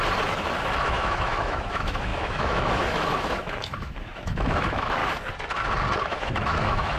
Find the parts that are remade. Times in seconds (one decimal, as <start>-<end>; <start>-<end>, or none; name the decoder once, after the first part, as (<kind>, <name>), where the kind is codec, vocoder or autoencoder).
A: 0.8-5.0 (autoencoder, DAC-VAE); 6.0-7.0